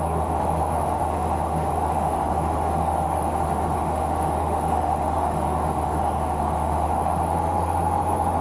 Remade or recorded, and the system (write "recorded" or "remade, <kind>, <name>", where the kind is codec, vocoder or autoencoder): remade, autoencoder, DAC-VAE